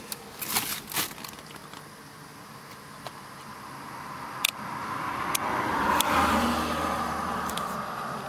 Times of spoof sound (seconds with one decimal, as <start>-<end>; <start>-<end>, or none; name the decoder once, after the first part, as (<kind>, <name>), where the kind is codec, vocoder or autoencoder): none